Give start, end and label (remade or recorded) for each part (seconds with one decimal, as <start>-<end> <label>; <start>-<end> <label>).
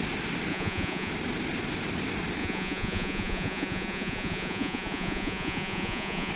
0.0-0.5 recorded; 0.5-1.1 remade; 1.1-2.4 recorded; 2.4-6.3 remade